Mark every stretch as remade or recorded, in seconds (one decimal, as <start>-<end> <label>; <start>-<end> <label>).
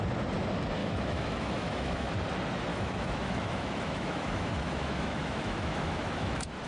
0.0-0.8 recorded; 0.8-2.1 remade; 2.1-2.7 recorded; 2.7-6.7 remade